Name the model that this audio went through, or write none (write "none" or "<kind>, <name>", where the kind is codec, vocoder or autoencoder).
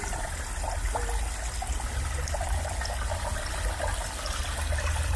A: none